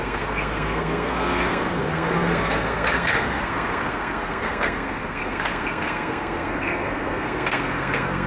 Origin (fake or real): fake